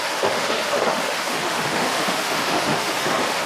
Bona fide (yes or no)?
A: no